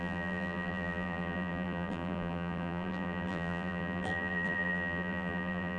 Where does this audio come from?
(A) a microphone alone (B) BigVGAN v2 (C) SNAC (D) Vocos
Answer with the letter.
B